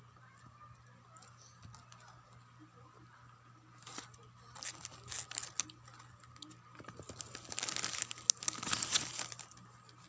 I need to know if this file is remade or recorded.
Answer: recorded